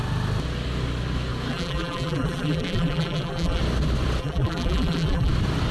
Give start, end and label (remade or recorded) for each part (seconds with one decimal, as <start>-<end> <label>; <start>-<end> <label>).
0.0-1.5 recorded; 1.5-3.6 remade; 3.6-4.2 recorded; 4.2-5.3 remade; 5.3-5.7 recorded